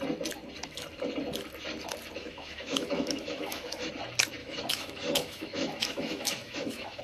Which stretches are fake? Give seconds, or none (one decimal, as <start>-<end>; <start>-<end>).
2.2-3.9; 4.4-7.0